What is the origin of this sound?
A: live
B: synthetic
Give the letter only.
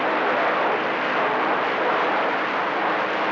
A